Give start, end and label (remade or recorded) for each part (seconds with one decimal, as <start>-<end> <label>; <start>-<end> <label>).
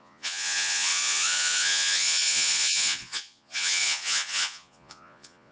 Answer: 0.0-5.5 remade